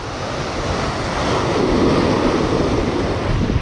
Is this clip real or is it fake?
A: real